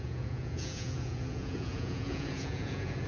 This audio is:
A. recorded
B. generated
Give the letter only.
B